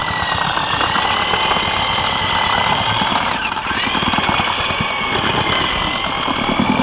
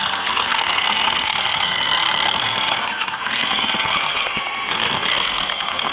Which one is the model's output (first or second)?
second